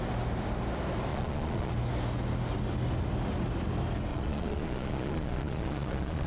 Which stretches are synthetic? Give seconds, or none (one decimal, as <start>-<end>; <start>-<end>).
1.1-1.7; 4.1-6.3